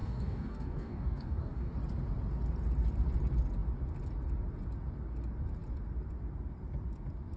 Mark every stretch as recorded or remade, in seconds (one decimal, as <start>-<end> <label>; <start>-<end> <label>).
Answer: 0.0-1.7 remade; 1.7-7.4 recorded